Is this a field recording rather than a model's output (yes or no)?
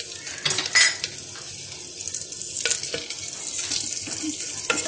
yes